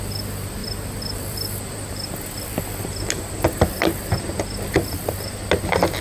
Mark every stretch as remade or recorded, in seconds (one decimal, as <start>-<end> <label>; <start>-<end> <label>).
0.0-0.6 recorded; 0.6-4.2 remade; 4.2-6.0 recorded